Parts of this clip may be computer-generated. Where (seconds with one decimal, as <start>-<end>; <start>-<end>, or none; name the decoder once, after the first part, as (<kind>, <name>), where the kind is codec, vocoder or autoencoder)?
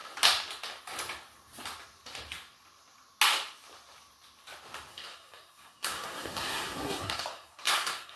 4.9-8.2 (codec, SNAC)